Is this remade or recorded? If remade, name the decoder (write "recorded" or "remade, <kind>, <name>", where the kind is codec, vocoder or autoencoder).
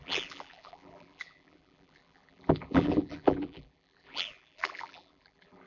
remade, vocoder, BigVGAN v2